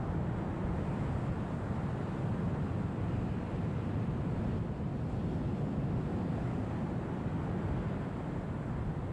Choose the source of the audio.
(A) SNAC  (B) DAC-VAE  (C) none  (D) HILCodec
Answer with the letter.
C